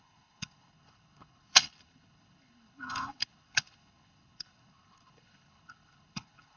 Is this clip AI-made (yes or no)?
yes